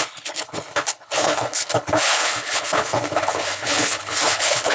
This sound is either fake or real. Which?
fake